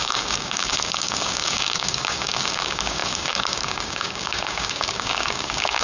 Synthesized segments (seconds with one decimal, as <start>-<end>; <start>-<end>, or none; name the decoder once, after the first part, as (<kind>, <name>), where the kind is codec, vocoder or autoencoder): 0.0-5.8 (codec, DAC)